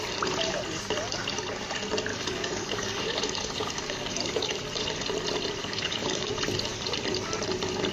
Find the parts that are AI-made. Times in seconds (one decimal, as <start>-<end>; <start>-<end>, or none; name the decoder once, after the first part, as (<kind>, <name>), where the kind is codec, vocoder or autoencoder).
2.1-4.6 (codec, DAC); 5.6-6.3